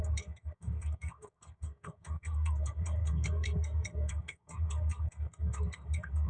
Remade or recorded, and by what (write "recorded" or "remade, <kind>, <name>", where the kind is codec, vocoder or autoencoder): remade, codec, SNAC